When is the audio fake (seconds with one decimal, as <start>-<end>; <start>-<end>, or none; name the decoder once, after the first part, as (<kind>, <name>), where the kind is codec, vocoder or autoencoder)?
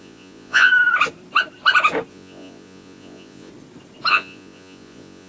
0.0-0.7 (vocoder, Vocos); 2.1-3.5; 4.1-5.3